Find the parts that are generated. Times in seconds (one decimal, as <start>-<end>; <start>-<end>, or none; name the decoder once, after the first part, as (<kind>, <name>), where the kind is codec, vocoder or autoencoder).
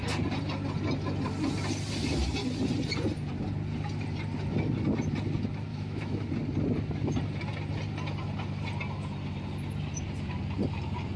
5.7-6.3 (autoencoder, DAC-VAE)